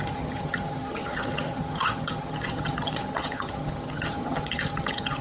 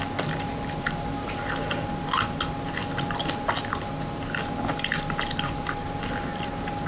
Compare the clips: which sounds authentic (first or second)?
second